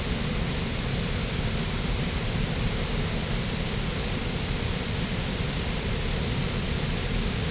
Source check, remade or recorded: recorded